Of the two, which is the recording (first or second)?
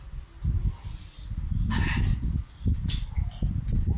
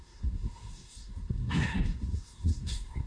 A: first